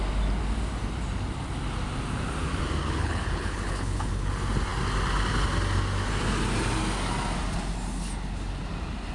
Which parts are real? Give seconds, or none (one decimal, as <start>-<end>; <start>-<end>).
0.0-2.8; 4.3-9.1